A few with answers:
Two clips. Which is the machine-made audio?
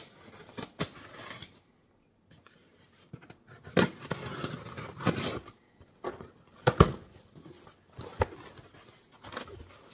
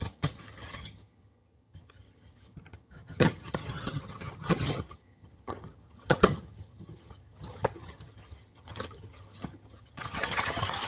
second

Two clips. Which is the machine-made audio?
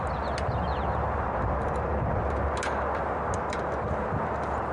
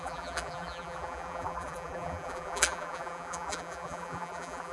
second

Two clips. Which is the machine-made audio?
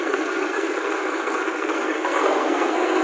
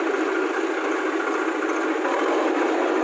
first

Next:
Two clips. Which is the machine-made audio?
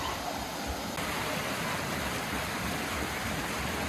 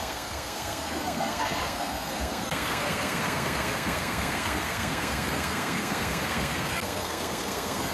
second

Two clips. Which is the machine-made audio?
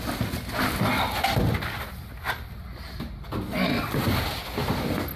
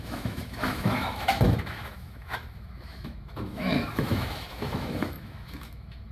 second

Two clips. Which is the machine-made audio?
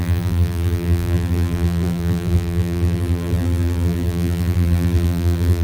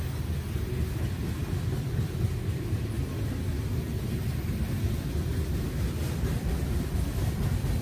first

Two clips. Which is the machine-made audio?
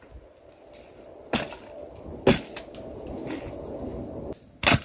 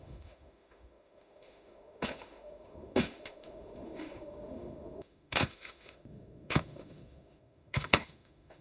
second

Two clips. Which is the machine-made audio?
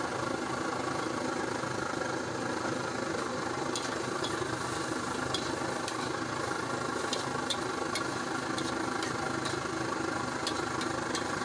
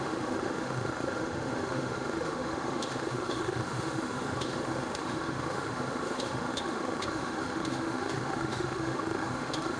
second